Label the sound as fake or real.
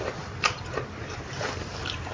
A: fake